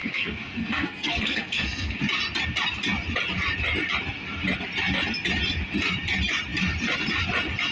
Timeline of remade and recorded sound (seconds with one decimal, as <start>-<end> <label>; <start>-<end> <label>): 0.0-2.0 remade; 2.0-7.7 recorded